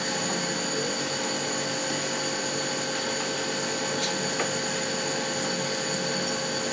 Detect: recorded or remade recorded